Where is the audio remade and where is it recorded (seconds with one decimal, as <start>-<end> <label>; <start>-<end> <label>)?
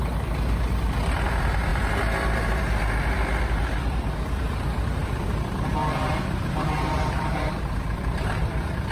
0.0-5.0 recorded; 5.0-8.9 remade